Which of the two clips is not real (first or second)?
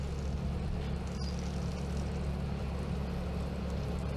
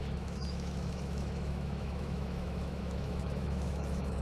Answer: second